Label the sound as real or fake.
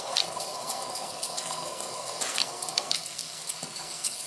fake